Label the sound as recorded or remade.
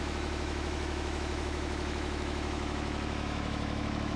remade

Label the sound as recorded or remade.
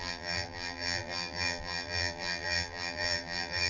remade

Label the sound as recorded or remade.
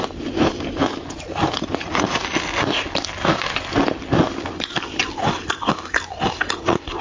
recorded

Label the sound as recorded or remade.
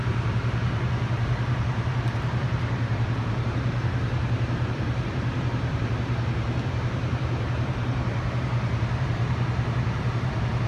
remade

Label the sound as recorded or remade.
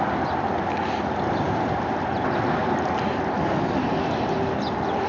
recorded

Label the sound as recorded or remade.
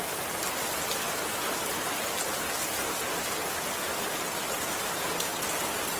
recorded